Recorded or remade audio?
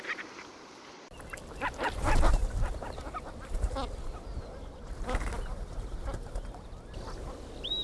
recorded